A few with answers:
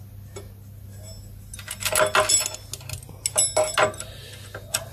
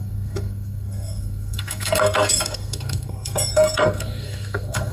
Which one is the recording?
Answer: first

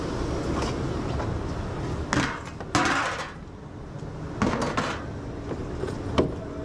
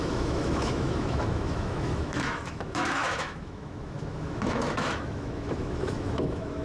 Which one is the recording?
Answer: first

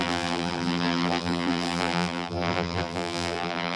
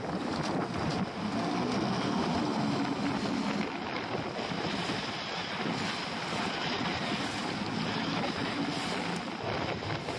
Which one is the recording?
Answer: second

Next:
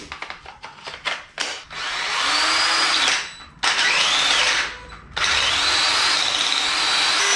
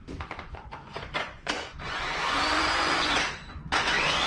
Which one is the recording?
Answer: first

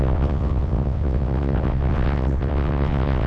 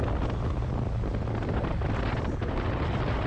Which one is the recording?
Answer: second